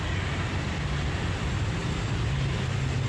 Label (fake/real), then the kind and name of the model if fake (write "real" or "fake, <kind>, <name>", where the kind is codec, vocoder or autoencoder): real